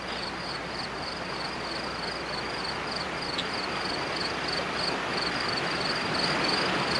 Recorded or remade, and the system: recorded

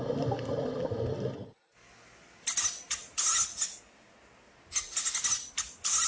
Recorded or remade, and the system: recorded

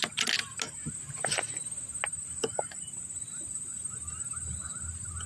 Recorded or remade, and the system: recorded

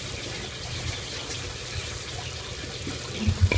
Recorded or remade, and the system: recorded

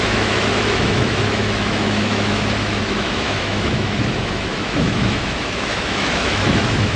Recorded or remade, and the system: remade, autoencoder, DAC-VAE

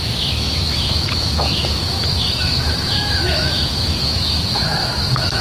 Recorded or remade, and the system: remade, autoencoder, DAC-VAE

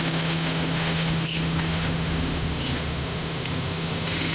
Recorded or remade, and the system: remade, autoencoder, DAC-VAE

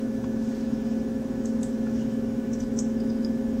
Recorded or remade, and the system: remade, autoencoder, DAC-VAE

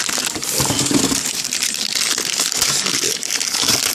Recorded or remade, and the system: recorded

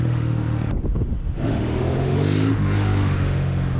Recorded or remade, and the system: remade, autoencoder, DAC-VAE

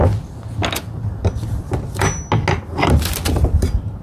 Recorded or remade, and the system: recorded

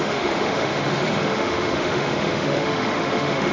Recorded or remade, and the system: remade, autoencoder, DAC-VAE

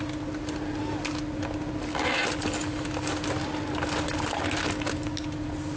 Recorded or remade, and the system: recorded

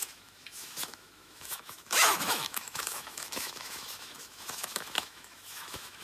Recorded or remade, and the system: remade, autoencoder, DAC-VAE